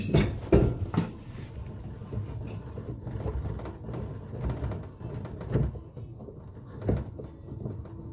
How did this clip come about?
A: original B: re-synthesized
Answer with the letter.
A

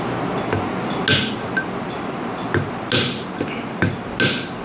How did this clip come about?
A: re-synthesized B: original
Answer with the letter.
B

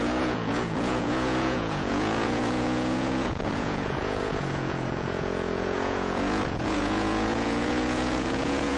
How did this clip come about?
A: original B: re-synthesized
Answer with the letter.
B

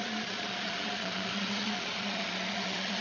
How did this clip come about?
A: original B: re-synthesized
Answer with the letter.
B